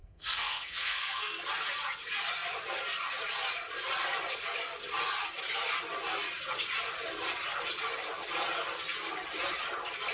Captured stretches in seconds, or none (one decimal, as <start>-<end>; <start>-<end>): 1.4-10.1